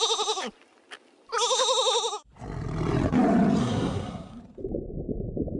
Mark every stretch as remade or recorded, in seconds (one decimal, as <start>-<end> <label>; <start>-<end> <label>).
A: 0.0-3.6 recorded; 3.6-4.4 remade; 4.4-5.6 recorded